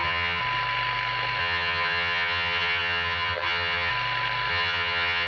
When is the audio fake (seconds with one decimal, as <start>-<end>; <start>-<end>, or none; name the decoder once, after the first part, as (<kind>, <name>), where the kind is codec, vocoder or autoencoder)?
0.0-0.4 (vocoder, HiFi-GAN); 1.4-3.9; 4.5-5.3